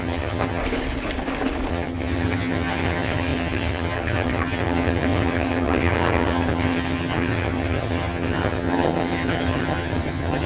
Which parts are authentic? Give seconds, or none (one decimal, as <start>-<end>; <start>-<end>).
0.6-1.7